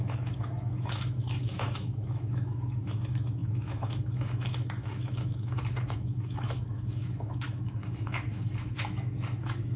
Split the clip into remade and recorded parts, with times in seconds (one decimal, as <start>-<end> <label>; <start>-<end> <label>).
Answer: 0.0-9.8 remade